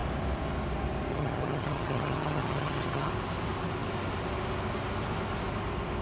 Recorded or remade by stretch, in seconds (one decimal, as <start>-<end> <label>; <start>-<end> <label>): 0.0-1.1 recorded; 1.1-3.1 remade; 3.1-6.0 recorded